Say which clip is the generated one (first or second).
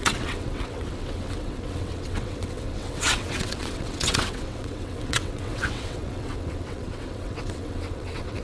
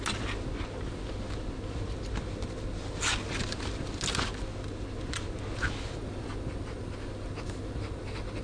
first